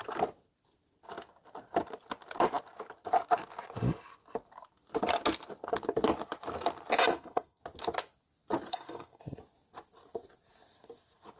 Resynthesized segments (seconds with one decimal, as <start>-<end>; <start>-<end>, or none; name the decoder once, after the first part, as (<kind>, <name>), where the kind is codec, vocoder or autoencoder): 7.1-7.6 (codec, SNAC); 8.7-9.2